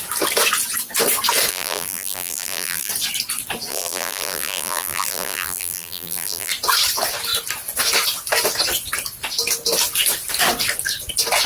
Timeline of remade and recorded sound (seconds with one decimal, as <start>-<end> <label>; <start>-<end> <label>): 0.0-1.5 recorded; 1.5-2.9 remade; 2.9-3.7 recorded; 3.7-6.5 remade; 6.5-11.5 recorded